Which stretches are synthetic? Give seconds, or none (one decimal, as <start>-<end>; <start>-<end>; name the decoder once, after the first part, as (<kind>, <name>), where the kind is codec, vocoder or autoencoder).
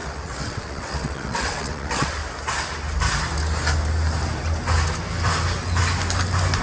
0.0-2.2 (vocoder, WaveNeXt)